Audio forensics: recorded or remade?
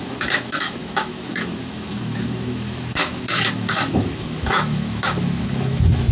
remade